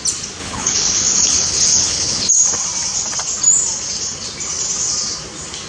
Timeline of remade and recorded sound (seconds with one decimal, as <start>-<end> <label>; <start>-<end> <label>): 0.0-0.4 recorded; 0.4-2.3 remade; 2.3-5.7 recorded